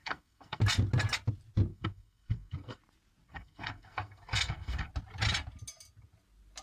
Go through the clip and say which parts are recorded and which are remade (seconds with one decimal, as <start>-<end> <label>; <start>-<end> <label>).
0.0-0.6 remade; 0.6-1.7 recorded; 1.7-2.8 remade; 2.8-3.3 recorded; 3.3-4.9 remade; 4.9-6.6 recorded

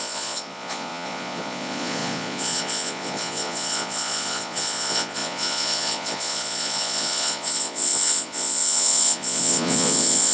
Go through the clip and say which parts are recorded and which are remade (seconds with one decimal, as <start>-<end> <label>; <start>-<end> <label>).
0.0-10.3 remade

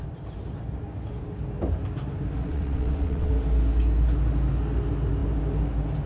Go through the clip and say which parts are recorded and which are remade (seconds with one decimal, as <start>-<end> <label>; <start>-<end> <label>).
0.0-2.5 recorded; 2.5-3.3 remade; 3.3-6.1 recorded

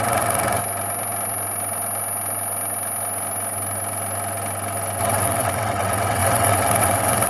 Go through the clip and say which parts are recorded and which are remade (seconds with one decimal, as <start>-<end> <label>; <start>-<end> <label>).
0.0-0.6 remade; 0.6-5.0 recorded; 5.0-7.3 remade

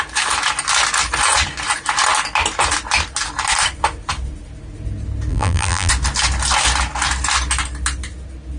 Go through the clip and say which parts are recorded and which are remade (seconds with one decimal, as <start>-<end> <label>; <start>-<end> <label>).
0.0-5.3 recorded; 5.3-5.9 remade; 5.9-8.6 recorded

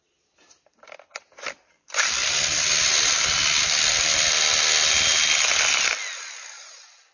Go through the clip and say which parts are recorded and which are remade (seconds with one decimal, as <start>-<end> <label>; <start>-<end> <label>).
0.0-7.1 recorded

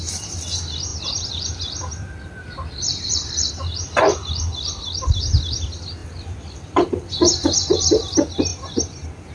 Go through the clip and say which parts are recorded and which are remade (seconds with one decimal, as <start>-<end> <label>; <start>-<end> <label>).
0.0-0.9 recorded; 0.9-3.5 remade; 3.5-6.0 recorded; 6.0-7.1 remade; 7.1-9.3 recorded

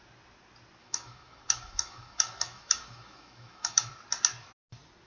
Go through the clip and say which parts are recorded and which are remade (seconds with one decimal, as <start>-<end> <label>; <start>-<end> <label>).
0.0-0.8 recorded; 0.8-3.9 remade; 3.9-5.1 recorded